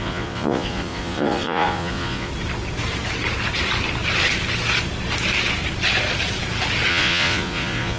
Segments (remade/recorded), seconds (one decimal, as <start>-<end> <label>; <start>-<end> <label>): 0.0-2.3 remade; 2.3-6.9 recorded; 6.9-8.0 remade